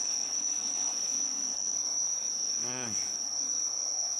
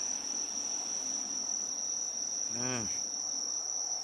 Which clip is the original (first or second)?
second